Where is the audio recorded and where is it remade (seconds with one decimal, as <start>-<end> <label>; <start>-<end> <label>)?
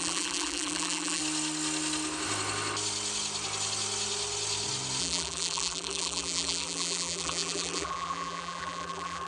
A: 0.0-1.2 remade; 1.2-5.0 recorded; 5.0-9.3 remade